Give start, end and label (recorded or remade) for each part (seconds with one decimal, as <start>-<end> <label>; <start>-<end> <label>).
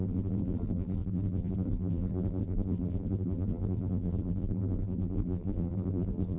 0.0-6.4 remade